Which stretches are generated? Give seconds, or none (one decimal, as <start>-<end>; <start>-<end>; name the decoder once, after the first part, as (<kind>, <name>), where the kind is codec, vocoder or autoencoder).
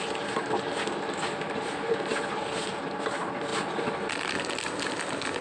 none